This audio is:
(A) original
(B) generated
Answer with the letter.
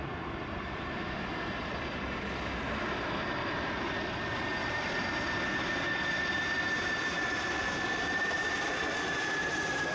B